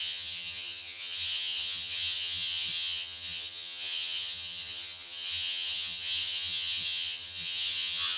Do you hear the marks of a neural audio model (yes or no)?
yes